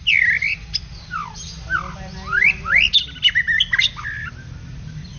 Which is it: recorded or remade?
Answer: recorded